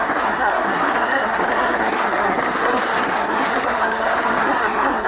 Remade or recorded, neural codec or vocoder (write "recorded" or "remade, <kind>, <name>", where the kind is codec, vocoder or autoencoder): remade, codec, SNAC